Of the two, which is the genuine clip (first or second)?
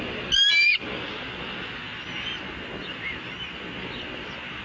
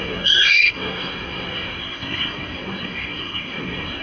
first